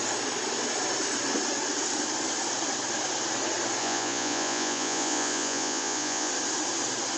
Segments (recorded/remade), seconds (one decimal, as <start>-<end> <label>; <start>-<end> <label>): 0.0-3.8 recorded; 3.8-6.3 remade; 6.3-7.2 recorded